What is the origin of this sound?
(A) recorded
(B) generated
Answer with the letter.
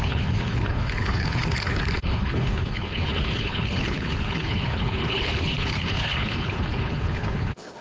B